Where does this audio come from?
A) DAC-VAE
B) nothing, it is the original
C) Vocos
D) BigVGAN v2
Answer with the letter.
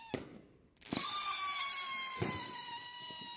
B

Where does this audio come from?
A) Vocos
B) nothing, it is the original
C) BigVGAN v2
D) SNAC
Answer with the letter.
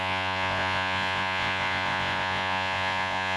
A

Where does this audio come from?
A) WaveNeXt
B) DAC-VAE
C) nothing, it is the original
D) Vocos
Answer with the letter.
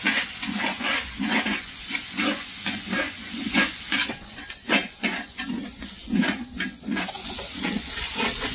D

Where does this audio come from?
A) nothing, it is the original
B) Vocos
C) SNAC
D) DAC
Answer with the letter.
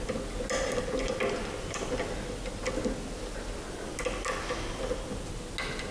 A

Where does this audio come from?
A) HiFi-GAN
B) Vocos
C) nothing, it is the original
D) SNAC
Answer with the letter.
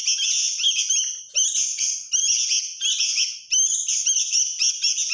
C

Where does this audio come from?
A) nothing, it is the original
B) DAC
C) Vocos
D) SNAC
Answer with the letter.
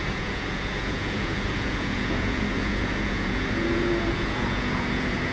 C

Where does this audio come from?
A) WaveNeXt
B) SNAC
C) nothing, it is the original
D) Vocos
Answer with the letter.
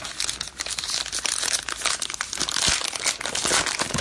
C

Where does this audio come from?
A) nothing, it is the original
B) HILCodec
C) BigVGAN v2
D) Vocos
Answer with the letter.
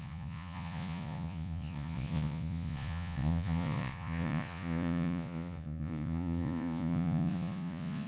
D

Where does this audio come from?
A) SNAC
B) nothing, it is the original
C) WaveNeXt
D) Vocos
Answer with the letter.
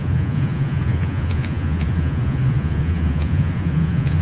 D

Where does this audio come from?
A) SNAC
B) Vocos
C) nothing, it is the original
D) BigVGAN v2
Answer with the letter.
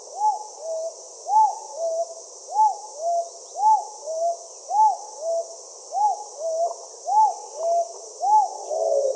C